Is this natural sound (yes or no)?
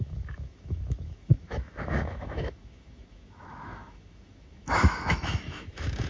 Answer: no